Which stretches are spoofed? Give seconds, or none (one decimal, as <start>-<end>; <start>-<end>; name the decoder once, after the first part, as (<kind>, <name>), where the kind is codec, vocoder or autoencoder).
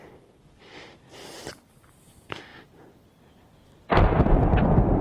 0.0-2.5 (vocoder, BigVGAN v2); 4.0-5.0